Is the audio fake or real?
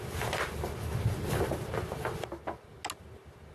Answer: real